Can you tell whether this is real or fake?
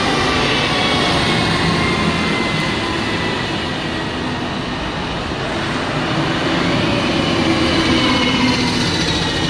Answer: real